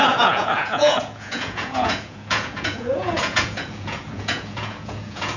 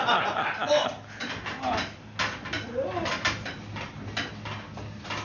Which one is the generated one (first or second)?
first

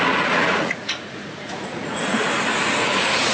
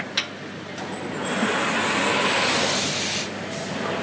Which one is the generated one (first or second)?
first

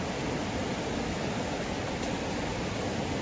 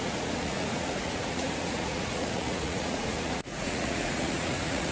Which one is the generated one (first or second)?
second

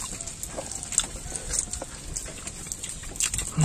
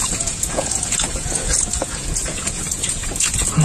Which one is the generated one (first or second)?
second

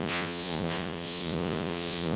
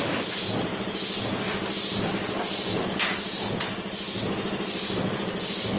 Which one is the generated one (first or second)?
first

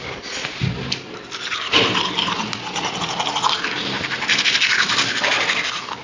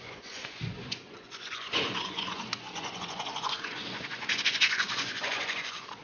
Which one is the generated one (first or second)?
second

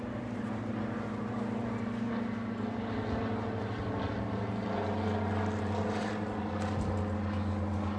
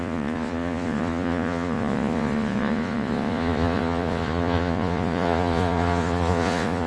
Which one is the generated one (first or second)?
second